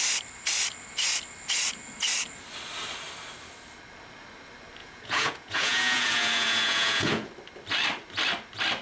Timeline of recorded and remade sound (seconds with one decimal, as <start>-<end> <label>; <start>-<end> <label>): 0.0-4.8 recorded; 4.8-7.3 remade; 7.3-8.8 recorded

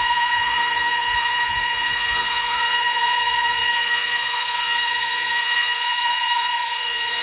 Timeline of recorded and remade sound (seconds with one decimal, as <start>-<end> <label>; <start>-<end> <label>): 0.0-7.2 remade

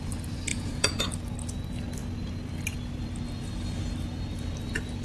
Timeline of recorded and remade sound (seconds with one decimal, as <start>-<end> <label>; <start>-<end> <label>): 0.0-0.5 recorded; 0.5-1.0 remade; 1.0-5.0 recorded

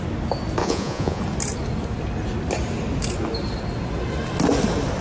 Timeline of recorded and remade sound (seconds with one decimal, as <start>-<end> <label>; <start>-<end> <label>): 0.0-0.6 recorded; 0.6-1.2 remade; 1.2-5.0 recorded

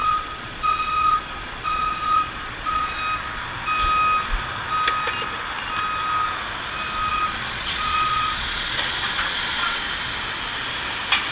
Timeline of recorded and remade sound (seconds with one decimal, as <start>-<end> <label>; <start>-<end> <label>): 0.0-3.0 remade; 3.0-7.1 recorded; 7.1-9.8 remade; 9.8-11.3 recorded